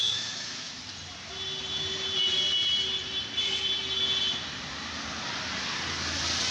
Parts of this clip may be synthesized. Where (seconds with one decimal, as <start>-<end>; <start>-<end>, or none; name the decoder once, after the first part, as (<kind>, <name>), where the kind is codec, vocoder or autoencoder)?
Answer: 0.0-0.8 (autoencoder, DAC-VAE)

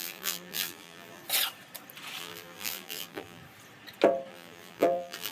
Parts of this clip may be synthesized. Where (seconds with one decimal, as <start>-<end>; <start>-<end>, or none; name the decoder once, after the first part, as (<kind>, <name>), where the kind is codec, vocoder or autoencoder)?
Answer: 0.0-1.2 (vocoder, BigVGAN v2); 2.2-3.4; 4.3-5.3

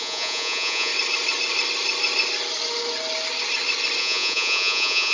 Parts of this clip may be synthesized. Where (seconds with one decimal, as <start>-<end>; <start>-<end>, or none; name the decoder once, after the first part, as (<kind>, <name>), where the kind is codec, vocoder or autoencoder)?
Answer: 0.0-0.9 (vocoder, Vocos); 4.0-5.1